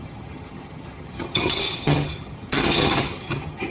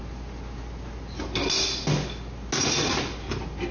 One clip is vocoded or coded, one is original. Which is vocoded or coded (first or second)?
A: first